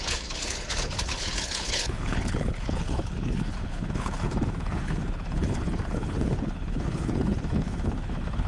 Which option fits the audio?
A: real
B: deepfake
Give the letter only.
B